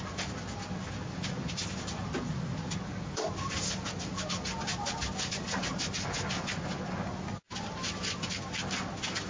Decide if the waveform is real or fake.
real